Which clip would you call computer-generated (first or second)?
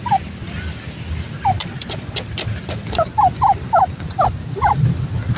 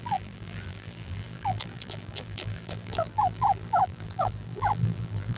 second